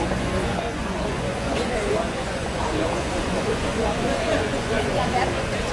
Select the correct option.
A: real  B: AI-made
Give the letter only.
B